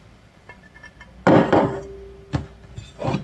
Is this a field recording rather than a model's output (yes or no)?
yes